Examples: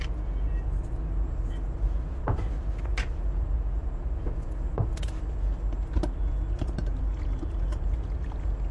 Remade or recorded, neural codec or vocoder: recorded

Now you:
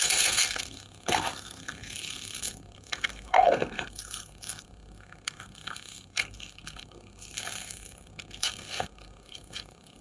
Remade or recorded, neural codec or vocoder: remade, codec, SNAC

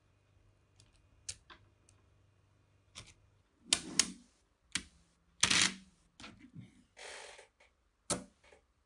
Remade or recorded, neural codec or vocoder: recorded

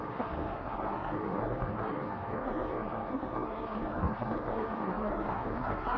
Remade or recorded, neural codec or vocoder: remade, codec, SNAC